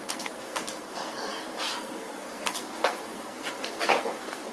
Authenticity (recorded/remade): remade